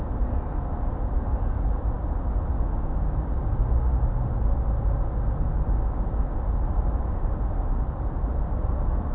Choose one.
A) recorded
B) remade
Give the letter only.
A